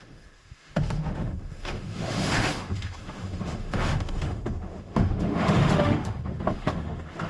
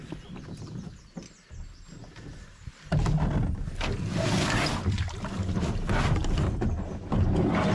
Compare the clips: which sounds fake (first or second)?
first